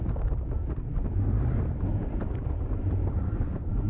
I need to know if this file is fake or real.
real